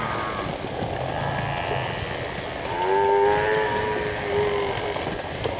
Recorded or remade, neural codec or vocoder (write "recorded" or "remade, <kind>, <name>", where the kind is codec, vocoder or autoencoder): recorded